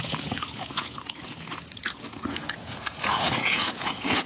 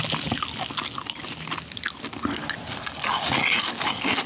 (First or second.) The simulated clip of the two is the first